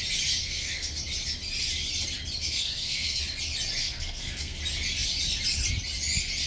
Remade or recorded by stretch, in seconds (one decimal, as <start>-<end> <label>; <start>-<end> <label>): 0.0-0.4 recorded; 0.4-0.9 remade; 0.9-2.4 recorded; 2.4-3.2 remade; 3.2-3.8 recorded; 3.8-4.6 remade; 4.6-6.5 recorded